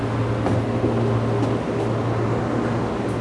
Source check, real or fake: real